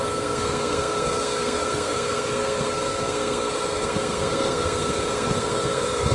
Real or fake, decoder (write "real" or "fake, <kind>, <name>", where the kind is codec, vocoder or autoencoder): fake, codec, SNAC